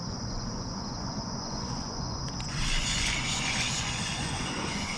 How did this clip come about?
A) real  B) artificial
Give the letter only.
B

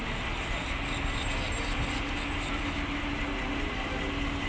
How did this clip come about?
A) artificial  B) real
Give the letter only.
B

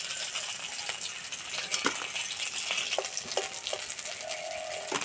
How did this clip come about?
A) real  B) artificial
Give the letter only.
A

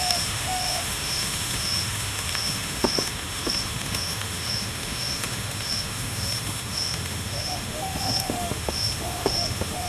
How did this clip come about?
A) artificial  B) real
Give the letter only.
A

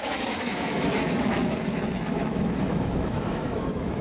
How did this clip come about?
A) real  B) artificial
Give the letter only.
B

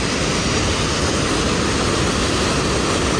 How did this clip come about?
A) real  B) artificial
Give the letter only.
A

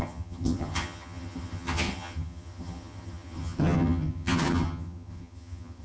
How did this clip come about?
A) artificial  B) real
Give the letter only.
A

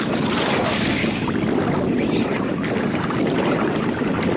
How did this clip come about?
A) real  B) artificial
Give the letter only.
A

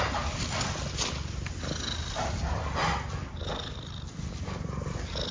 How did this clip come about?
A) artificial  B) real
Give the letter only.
B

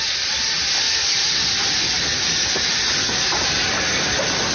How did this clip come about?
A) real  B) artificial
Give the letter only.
A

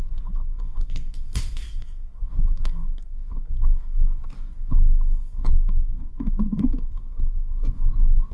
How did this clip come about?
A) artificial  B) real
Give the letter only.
A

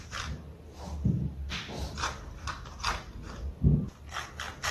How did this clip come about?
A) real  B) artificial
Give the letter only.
A